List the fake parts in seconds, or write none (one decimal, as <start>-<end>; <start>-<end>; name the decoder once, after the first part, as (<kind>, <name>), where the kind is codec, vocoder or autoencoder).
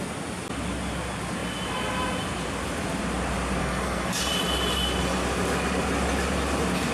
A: 3.6-4.2 (codec, SNAC)